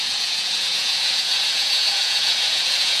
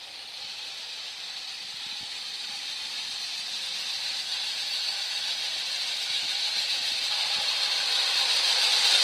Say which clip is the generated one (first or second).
first